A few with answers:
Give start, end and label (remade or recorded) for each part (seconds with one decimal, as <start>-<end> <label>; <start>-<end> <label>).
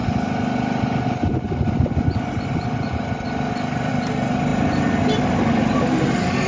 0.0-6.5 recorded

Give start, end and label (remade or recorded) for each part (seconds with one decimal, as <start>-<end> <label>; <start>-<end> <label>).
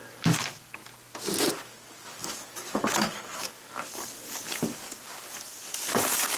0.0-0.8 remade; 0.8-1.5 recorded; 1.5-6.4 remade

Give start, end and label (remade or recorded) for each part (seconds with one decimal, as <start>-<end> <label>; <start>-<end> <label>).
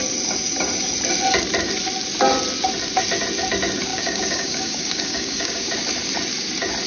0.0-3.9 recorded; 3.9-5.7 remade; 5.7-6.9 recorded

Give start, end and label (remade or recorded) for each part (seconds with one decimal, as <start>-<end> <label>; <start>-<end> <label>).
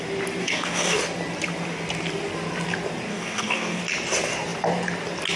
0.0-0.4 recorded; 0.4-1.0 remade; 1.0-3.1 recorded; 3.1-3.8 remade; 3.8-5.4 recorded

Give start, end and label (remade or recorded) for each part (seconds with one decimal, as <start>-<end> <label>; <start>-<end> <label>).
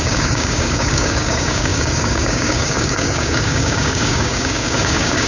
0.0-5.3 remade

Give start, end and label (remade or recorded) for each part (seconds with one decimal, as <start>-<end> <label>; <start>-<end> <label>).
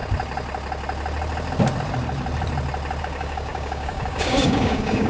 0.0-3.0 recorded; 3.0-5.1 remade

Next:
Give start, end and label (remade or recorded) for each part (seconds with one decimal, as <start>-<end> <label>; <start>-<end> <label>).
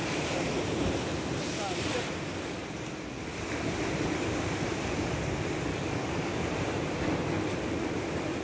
0.0-5.7 recorded; 5.7-6.5 remade; 6.5-8.4 recorded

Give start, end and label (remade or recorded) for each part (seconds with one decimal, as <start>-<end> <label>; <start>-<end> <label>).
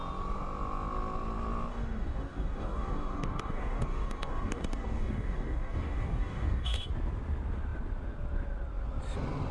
0.0-1.7 recorded; 1.7-6.9 remade; 6.9-9.5 recorded